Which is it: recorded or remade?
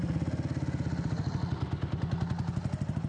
recorded